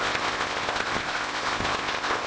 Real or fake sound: fake